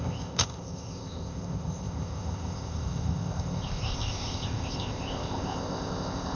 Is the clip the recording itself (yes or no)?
no